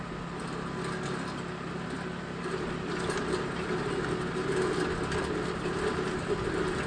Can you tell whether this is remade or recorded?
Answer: recorded